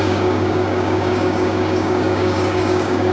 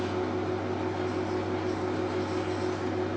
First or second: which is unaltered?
second